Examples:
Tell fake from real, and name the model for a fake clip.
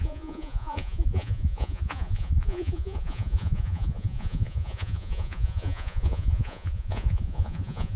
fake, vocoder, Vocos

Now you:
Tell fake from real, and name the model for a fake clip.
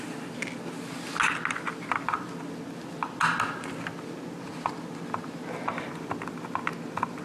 real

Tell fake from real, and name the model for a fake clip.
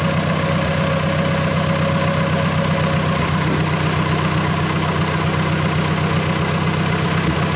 real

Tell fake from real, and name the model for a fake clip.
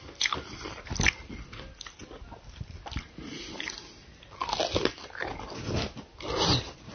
real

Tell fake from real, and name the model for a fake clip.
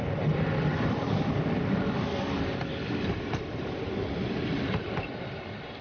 fake, vocoder, BigVGAN v2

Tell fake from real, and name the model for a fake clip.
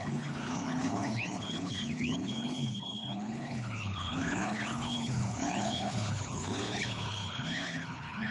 fake, codec, HILCodec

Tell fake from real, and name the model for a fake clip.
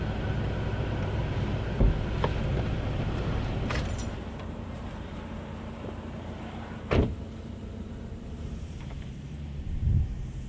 fake, vocoder, BigVGAN v2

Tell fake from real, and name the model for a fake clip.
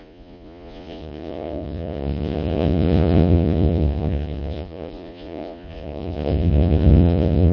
fake, vocoder, Vocos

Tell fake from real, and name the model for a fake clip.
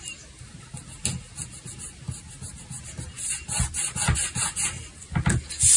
real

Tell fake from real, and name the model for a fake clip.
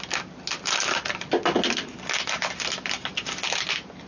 real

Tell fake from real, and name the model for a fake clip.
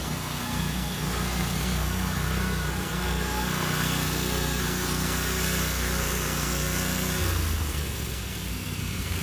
fake, codec, SNAC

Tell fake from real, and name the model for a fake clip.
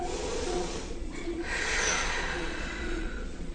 fake, vocoder, Vocos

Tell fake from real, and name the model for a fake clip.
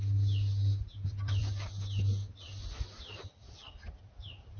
real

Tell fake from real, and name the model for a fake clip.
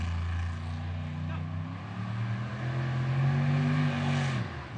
real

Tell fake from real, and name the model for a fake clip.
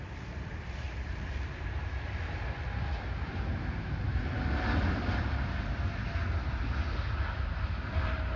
real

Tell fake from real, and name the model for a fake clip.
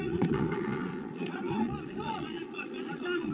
fake, vocoder, Vocos